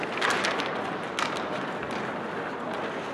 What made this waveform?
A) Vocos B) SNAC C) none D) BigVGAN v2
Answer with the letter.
C